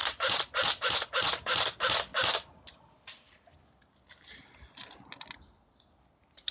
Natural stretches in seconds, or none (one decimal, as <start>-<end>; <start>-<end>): 0.7-2.1; 2.6-6.5